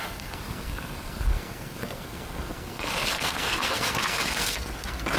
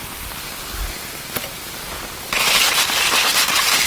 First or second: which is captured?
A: second